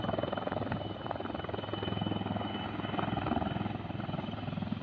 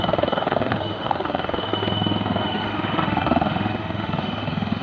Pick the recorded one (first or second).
first